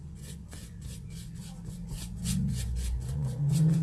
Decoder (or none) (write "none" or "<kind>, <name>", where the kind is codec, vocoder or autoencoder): vocoder, Vocos